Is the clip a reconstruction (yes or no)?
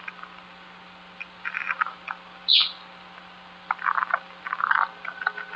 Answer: no